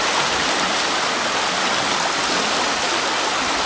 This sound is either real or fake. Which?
real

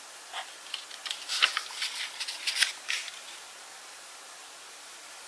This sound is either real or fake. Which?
real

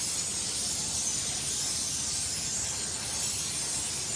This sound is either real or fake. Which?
real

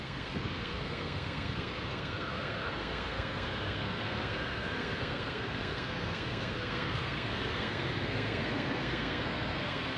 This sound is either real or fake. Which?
fake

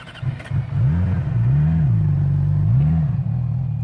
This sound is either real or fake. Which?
real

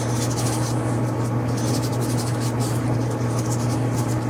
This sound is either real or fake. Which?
real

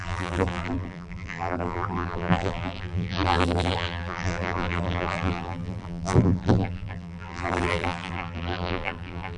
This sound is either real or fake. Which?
fake